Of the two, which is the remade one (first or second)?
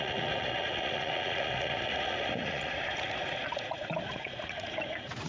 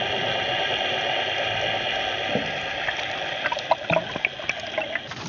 first